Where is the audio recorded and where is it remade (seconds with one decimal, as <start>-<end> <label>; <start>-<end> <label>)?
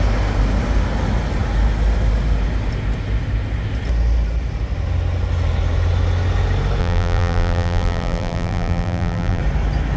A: 0.0-6.8 recorded; 6.8-9.4 remade; 9.4-10.0 recorded